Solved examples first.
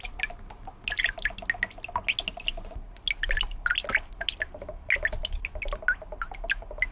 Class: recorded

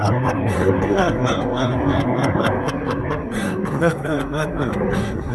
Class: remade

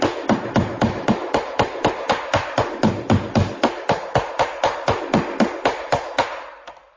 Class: recorded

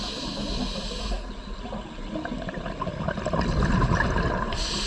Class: recorded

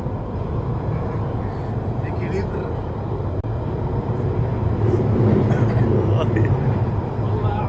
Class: recorded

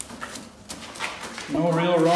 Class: recorded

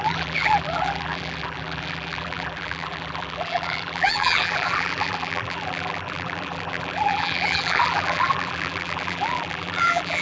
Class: remade